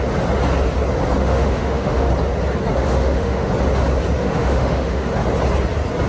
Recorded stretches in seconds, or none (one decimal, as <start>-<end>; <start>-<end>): 0.0-1.2; 2.1-2.8; 3.5-4.2; 5.1-6.1